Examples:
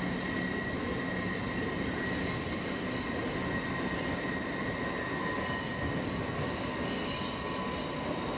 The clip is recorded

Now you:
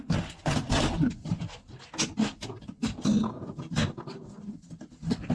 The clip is recorded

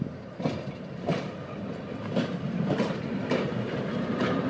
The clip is remade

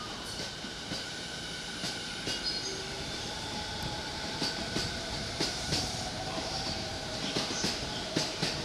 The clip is remade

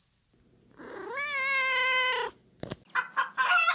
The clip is recorded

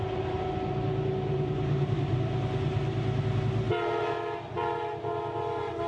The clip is recorded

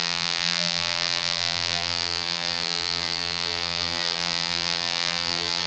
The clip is remade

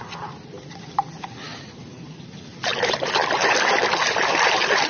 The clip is remade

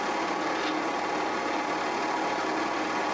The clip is recorded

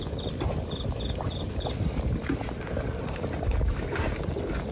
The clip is recorded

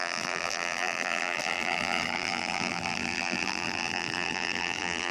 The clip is remade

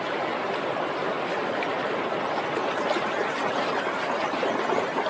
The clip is recorded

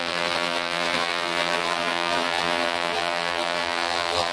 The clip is remade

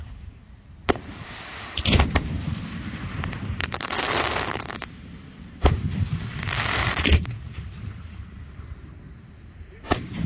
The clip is remade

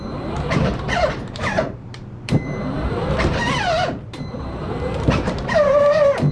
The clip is remade